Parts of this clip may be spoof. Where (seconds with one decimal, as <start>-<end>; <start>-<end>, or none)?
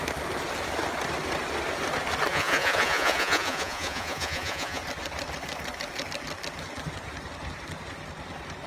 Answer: 2.3-4.8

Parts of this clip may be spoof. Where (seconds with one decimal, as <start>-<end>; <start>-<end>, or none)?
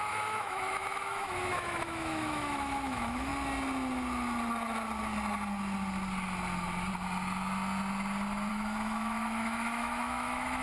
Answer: 0.0-3.3; 8.5-10.6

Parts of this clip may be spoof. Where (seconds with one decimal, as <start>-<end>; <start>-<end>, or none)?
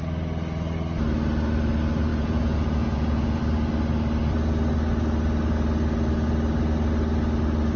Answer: 2.1-3.4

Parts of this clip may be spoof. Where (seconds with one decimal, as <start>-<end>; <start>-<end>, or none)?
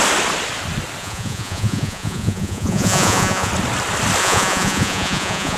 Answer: 1.0-3.5; 4.2-5.6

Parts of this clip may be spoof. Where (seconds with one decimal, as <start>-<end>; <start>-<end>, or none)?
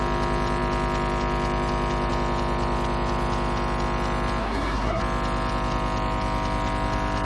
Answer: 4.4-5.0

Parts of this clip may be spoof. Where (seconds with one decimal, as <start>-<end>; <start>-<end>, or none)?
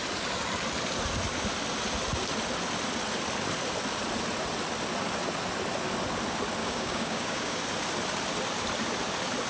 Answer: 6.6-7.6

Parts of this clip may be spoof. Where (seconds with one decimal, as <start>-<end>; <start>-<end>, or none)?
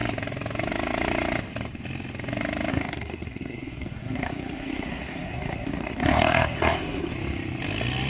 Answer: 2.7-7.1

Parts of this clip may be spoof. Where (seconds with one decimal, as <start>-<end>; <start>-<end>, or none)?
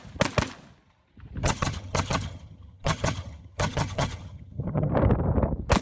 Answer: 1.4-4.9